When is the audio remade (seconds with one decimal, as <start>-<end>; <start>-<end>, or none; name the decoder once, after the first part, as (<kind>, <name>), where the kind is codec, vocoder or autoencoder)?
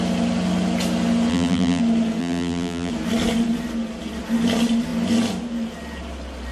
1.3-1.8 (vocoder, BigVGAN v2); 2.2-2.9